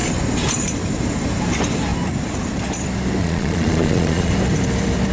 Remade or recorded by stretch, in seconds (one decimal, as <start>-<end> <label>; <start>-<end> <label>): 0.0-3.2 recorded; 3.2-4.3 remade; 4.3-5.1 recorded